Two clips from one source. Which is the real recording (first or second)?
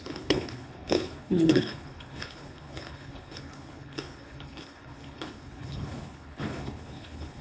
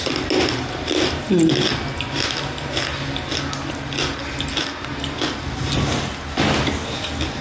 second